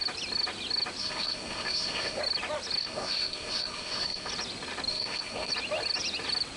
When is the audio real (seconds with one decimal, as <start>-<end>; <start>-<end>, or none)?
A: 0.0-1.0; 2.2-2.8; 4.3-4.9; 5.5-6.6